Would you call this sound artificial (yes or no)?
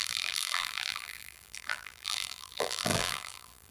yes